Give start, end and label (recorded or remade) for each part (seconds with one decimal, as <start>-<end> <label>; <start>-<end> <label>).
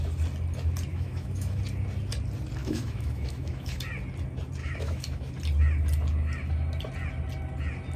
0.0-0.9 recorded; 0.9-1.6 remade; 1.6-2.6 recorded; 2.6-3.8 remade; 3.8-4.6 recorded; 4.6-5.3 remade; 5.3-8.0 recorded